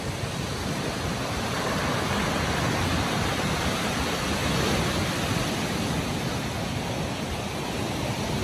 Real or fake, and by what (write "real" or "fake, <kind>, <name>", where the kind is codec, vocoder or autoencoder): real